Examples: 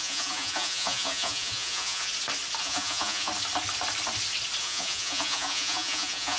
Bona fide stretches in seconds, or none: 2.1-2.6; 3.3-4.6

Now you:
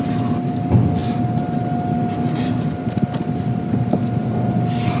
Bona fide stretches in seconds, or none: 0.0-5.0